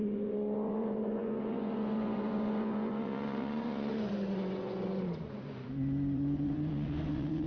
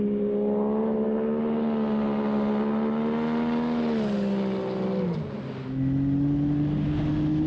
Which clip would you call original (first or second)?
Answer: second